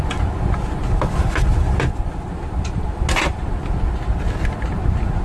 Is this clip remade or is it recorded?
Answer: recorded